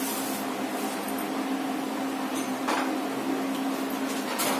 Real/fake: real